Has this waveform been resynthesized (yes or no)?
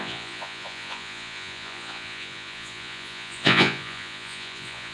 yes